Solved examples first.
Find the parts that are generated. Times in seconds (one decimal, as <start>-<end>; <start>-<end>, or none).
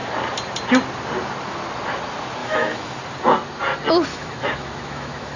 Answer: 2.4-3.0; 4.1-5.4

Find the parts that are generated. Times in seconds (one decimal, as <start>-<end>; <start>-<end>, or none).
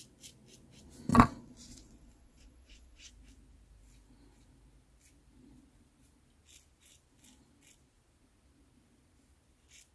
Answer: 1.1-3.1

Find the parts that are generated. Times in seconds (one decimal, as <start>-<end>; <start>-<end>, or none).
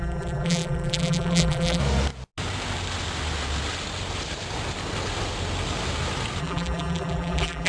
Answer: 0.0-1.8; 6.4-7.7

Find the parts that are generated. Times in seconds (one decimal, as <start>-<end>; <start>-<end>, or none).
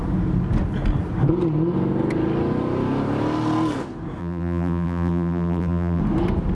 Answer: 4.2-6.0